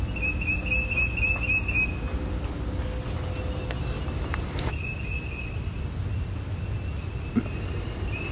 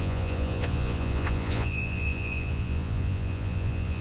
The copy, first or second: second